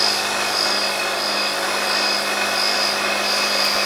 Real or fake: real